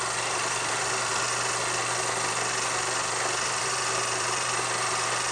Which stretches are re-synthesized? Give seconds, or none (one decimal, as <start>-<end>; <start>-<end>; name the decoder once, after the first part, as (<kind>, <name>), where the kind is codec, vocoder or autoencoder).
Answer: 0.0-1.1 (vocoder, BigVGAN v2); 3.6-5.3